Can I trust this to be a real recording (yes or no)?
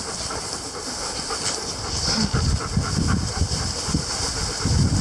yes